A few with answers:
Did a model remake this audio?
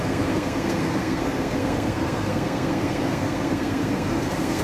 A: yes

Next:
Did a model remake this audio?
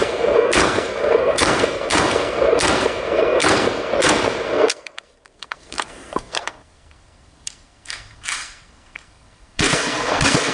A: yes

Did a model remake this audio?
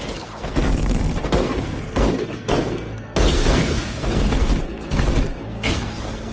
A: yes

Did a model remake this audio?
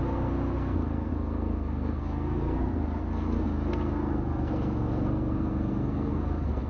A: yes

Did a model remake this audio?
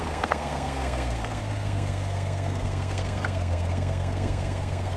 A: yes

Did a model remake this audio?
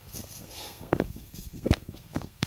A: yes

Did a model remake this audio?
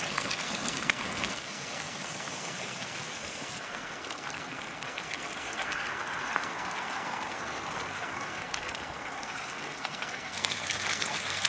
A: yes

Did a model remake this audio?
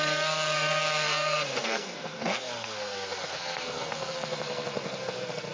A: yes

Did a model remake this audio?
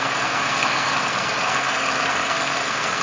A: yes